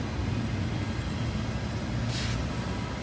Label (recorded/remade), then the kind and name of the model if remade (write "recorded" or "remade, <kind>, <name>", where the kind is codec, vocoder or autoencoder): recorded